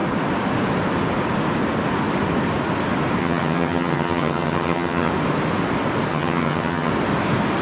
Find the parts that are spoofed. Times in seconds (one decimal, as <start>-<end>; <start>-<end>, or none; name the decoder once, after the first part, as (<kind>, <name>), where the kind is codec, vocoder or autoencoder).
3.2-5.1 (vocoder, HiFi-GAN); 6.1-6.9